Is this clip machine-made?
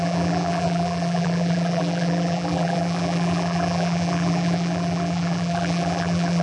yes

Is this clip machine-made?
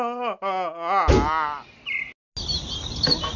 no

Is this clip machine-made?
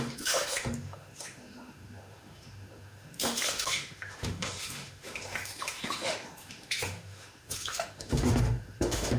yes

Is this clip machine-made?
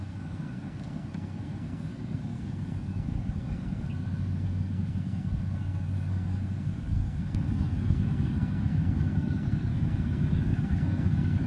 yes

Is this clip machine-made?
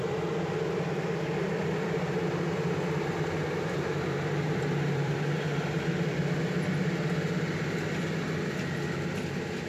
yes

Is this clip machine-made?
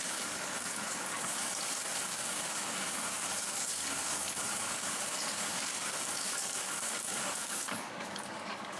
yes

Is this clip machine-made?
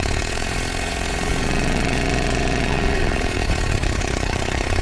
yes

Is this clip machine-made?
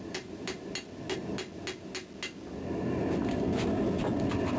no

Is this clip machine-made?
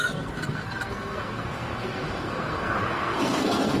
yes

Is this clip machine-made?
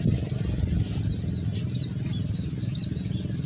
no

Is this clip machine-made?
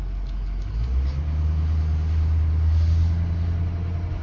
no